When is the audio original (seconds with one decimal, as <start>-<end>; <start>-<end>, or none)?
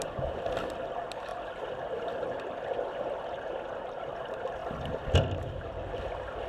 0.0-6.5